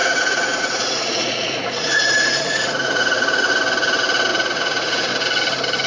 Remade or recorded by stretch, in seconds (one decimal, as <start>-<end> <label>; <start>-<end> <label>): 0.0-3.5 remade; 3.5-4.3 recorded; 4.3-5.1 remade; 5.1-5.9 recorded